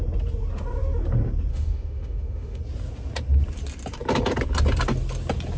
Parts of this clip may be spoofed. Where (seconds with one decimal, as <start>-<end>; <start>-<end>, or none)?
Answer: 1.5-2.6